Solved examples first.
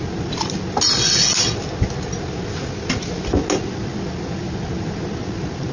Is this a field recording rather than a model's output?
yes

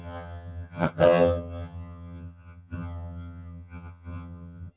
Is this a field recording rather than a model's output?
no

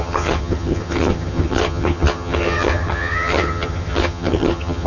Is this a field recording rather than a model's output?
no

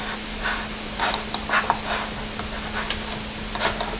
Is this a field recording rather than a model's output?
yes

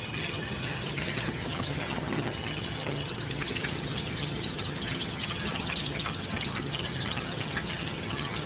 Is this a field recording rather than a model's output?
no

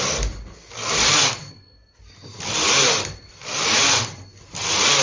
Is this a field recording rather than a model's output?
yes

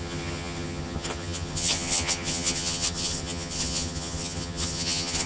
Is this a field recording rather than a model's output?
no